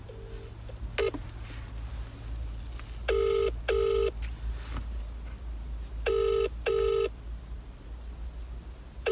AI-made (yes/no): no